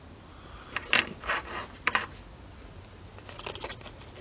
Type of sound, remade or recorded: recorded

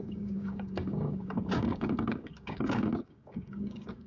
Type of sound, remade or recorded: remade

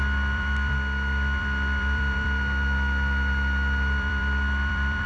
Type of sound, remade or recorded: remade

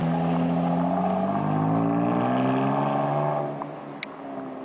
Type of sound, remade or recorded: recorded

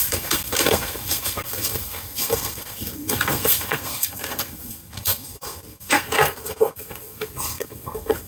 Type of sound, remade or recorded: remade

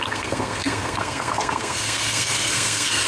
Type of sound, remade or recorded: remade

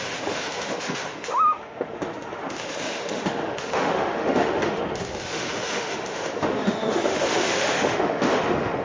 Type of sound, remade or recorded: remade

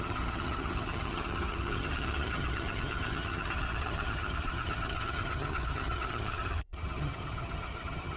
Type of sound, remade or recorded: remade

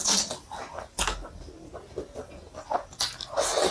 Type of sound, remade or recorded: recorded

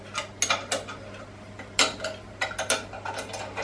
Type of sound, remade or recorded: recorded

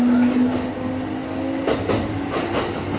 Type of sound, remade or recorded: recorded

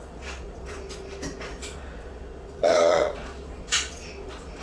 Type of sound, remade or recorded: remade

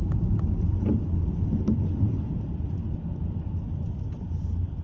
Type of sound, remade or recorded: recorded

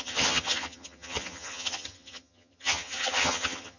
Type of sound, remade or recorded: remade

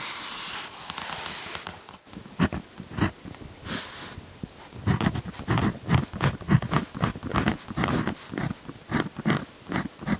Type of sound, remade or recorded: recorded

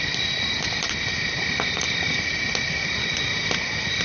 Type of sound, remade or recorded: recorded